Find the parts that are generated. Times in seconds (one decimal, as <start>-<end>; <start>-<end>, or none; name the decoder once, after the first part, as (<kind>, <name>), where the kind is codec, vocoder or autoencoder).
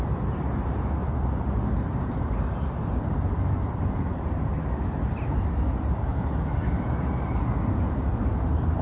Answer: 0.0-4.5 (vocoder, BigVGAN v2); 8.2-8.8